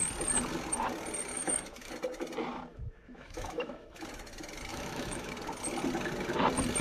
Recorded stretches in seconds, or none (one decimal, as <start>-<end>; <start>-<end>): 0.0-1.3; 1.9-2.7; 4.0-4.7; 5.3-6.8